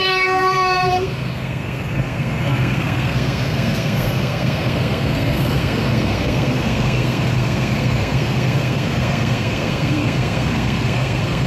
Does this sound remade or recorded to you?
remade